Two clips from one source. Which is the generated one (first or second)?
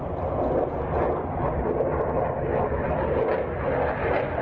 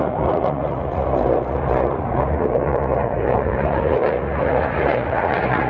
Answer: second